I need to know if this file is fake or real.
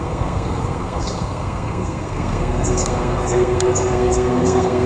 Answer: fake